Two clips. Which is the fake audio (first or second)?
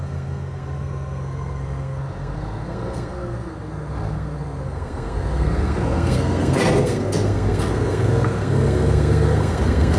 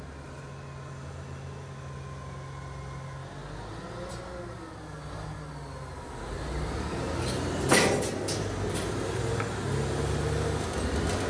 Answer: first